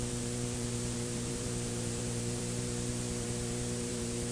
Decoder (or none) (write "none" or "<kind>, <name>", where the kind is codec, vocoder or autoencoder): vocoder, BigVGAN v2